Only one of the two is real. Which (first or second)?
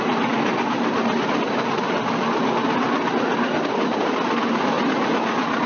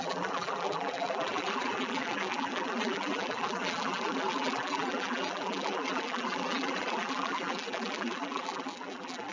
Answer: first